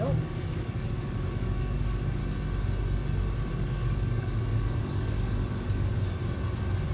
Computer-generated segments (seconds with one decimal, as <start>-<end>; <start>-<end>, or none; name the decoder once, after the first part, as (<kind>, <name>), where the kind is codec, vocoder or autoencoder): 0.0-2.2 (codec, DAC); 3.5-6.2